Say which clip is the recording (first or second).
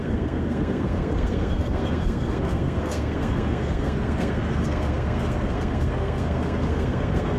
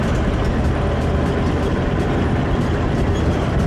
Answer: second